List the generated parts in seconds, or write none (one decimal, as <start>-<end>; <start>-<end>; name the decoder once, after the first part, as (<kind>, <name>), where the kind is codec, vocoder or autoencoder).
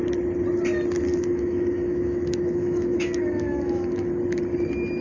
1.1-4.1 (autoencoder, DAC-VAE)